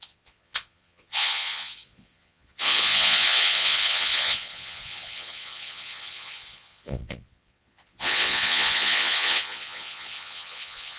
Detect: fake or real fake